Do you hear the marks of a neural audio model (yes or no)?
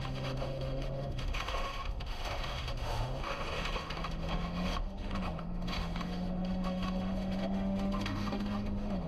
yes